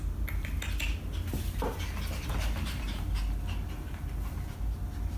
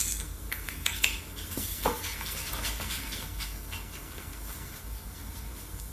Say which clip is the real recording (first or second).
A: first